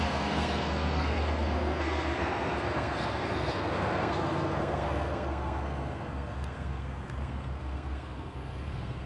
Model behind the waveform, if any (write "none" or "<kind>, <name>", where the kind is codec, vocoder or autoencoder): codec, SNAC